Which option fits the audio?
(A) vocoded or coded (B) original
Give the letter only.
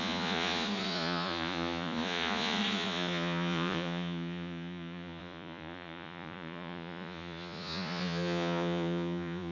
A